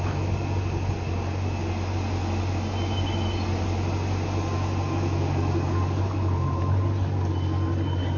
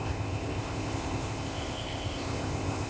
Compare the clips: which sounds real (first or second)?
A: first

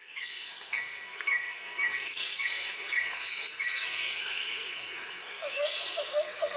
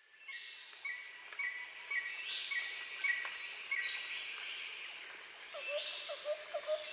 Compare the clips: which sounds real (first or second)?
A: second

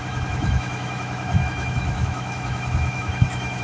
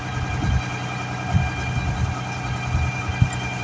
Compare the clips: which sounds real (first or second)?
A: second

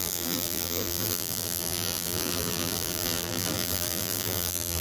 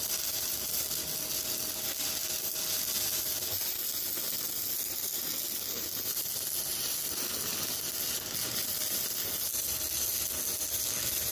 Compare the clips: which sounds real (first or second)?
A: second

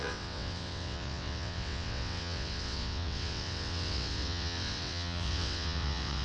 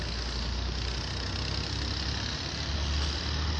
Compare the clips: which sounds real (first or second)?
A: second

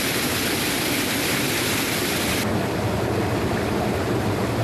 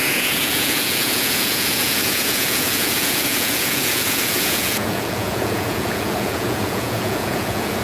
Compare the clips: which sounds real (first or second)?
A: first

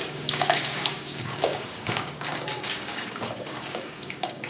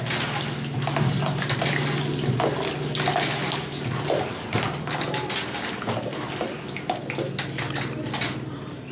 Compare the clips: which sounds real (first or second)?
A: second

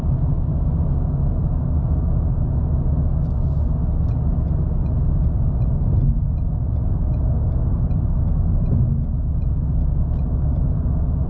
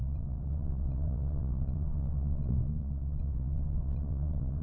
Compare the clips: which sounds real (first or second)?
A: first